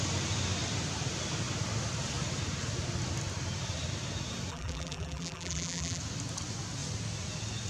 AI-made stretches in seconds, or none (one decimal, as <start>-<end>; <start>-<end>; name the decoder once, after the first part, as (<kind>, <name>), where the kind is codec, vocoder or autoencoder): 4.5-6.0 (vocoder, BigVGAN v2)